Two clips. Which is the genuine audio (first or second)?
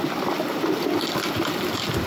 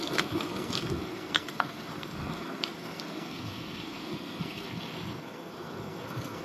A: first